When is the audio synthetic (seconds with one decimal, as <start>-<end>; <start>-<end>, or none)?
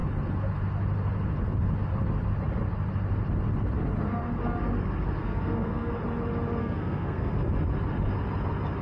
5.2-5.9; 6.6-7.3